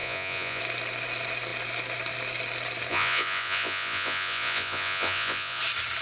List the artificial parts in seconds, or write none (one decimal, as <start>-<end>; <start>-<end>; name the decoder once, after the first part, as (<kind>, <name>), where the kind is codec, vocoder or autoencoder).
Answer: 0.0-0.6 (vocoder, Vocos); 2.9-5.6